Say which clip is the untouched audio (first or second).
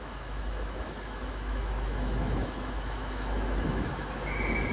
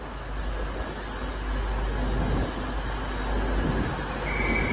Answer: second